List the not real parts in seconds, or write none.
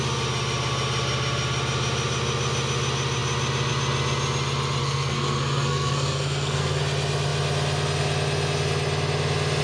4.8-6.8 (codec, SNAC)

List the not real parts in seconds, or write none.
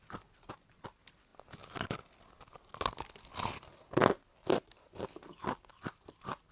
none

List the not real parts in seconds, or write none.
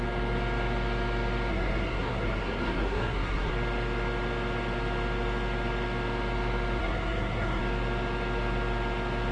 1.5-3.5 (codec, SNAC); 6.8-7.6